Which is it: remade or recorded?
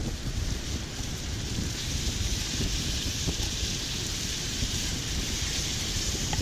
remade